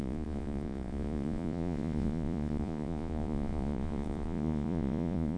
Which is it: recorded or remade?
remade